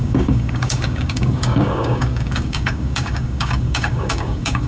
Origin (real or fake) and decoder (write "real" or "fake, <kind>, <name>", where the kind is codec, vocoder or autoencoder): fake, codec, DAC